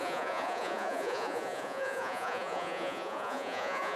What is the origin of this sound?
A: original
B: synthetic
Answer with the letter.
B